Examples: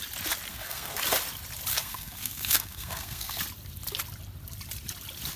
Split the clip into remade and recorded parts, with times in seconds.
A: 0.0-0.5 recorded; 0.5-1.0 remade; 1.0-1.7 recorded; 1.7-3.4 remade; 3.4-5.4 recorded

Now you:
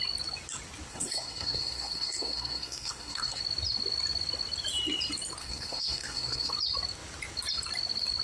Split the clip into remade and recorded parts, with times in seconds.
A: 0.0-0.9 recorded; 0.9-3.4 remade; 3.4-5.4 recorded; 5.4-6.5 remade; 6.5-8.2 recorded